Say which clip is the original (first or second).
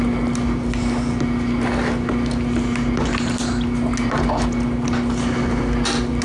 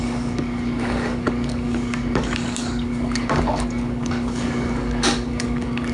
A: first